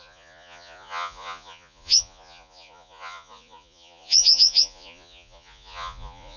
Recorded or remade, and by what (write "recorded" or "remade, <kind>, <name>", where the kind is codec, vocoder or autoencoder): remade, vocoder, Vocos